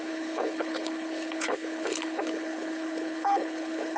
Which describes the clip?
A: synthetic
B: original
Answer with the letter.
A